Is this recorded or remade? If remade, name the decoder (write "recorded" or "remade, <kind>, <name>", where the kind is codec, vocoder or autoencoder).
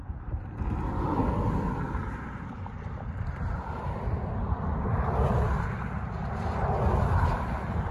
remade, vocoder, BigVGAN v2